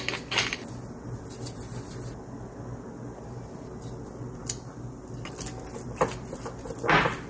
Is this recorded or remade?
recorded